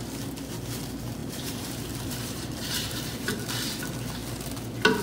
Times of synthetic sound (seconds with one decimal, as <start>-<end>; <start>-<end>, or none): 1.2-3.3